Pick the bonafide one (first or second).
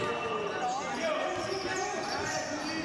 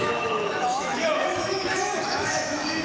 first